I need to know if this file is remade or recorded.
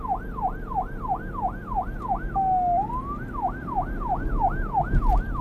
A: recorded